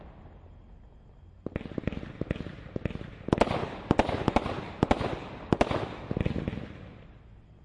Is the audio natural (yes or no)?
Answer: yes